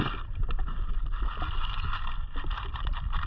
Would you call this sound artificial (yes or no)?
no